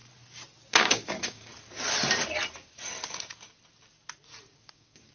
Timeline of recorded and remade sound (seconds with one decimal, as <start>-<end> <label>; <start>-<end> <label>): 0.0-0.5 recorded; 0.5-1.5 remade; 1.5-4.6 recorded; 4.6-5.1 remade